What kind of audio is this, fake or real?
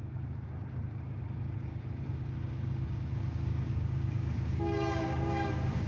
fake